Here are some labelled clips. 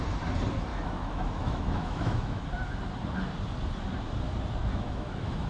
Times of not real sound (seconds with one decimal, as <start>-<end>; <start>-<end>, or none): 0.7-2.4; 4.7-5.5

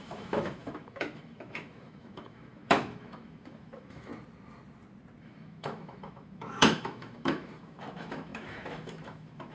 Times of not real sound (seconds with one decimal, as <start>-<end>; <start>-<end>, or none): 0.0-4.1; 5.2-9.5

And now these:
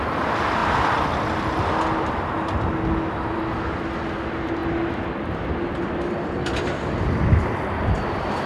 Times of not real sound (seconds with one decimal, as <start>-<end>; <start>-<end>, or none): none

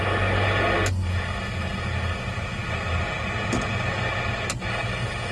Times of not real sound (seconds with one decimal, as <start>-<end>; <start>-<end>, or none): none

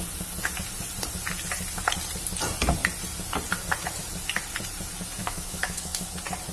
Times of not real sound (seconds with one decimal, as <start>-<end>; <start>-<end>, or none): 5.2-6.1